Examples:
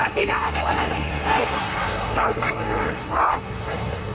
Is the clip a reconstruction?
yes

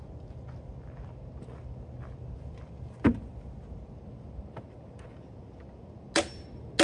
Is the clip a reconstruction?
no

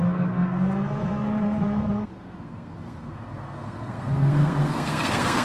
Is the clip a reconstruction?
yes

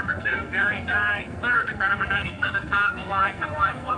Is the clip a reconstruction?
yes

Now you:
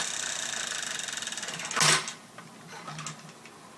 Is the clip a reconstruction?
no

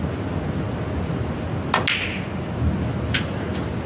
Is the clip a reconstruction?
no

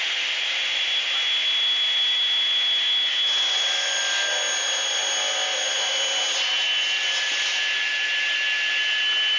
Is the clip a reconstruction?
no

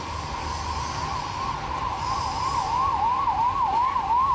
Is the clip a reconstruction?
no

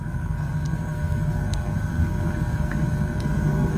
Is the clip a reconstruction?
yes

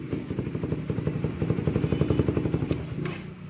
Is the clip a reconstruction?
no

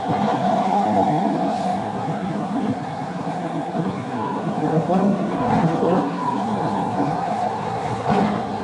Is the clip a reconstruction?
yes